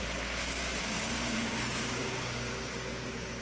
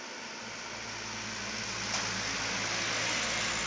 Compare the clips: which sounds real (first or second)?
second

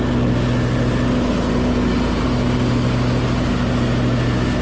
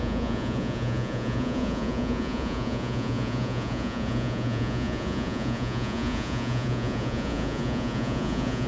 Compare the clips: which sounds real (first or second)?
first